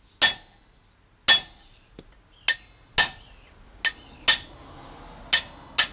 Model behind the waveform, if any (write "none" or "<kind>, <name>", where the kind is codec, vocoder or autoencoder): none